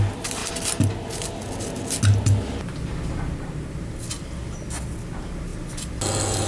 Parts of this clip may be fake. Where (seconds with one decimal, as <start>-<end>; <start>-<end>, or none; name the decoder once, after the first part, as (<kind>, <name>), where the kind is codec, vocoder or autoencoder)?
none

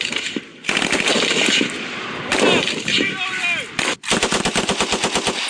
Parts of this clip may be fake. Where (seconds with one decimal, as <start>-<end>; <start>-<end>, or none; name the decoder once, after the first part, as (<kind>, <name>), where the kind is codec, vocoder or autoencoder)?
none

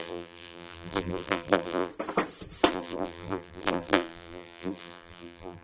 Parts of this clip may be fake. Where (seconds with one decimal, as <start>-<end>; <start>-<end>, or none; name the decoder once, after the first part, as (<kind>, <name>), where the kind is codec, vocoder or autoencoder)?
0.0-1.9 (vocoder, BigVGAN v2); 2.7-5.6

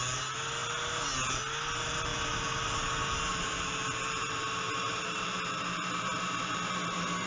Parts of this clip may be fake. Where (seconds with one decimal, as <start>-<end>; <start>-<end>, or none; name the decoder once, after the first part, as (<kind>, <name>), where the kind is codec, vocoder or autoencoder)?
4.2-7.3 (vocoder, BigVGAN v2)